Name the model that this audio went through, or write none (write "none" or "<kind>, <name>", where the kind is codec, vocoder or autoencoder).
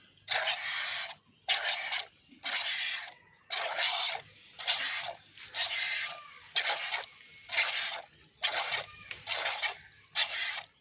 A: none